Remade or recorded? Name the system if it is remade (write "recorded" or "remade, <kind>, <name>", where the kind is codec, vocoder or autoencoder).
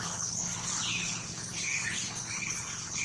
remade, codec, HILCodec